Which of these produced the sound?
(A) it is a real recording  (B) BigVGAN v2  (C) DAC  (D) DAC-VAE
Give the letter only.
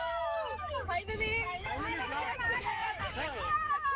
D